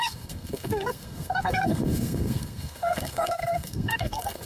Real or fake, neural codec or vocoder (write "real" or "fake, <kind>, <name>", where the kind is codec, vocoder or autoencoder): fake, codec, SNAC